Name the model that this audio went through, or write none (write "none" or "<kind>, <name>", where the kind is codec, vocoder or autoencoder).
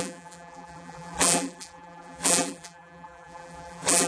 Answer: vocoder, BigVGAN v2